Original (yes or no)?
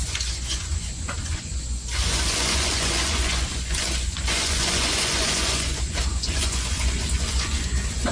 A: no